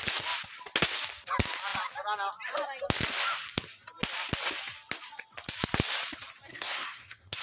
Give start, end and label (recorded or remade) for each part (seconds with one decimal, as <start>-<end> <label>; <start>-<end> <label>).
0.0-6.5 recorded; 6.5-7.4 remade